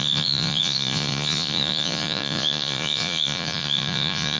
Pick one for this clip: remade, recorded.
remade